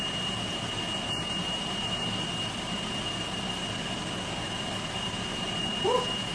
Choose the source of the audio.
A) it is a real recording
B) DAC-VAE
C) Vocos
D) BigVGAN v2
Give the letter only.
D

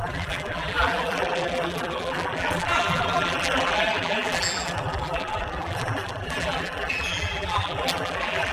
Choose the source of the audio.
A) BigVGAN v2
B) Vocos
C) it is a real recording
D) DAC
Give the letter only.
A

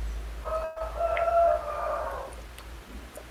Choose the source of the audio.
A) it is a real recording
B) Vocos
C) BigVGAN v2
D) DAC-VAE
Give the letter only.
A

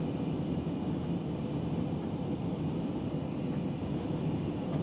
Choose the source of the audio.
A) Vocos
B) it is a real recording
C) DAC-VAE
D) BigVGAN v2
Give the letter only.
B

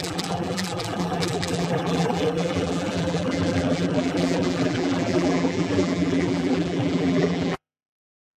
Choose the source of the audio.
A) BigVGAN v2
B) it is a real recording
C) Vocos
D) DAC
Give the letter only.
A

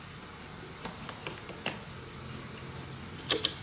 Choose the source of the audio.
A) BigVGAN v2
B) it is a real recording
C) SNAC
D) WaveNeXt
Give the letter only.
B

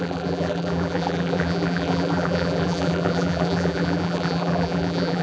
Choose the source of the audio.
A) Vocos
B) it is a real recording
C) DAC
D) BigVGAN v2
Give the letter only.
D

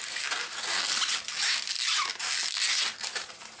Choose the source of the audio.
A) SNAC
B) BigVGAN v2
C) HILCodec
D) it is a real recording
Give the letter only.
D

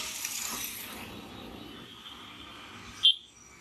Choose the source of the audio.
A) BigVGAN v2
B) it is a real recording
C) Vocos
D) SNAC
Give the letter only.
B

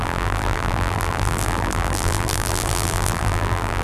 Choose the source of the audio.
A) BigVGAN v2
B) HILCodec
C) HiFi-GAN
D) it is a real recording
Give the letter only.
A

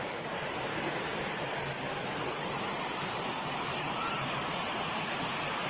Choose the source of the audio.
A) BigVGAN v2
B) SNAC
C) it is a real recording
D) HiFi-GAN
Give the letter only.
A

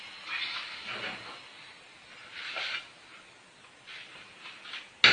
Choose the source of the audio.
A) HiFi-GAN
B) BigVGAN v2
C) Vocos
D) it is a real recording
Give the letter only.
D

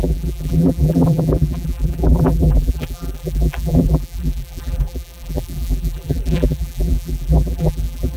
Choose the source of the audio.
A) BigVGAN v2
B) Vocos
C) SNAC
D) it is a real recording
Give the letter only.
A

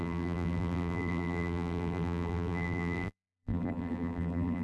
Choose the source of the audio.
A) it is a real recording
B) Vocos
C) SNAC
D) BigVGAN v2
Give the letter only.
D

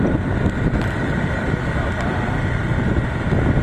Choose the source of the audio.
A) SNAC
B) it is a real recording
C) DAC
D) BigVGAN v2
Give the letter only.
B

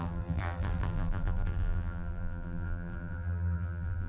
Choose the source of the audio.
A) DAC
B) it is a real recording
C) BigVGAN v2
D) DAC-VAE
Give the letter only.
C